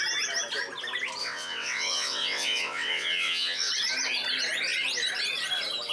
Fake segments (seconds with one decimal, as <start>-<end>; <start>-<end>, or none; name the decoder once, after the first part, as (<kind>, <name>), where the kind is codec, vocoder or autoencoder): 1.2-3.7 (vocoder, WaveNeXt)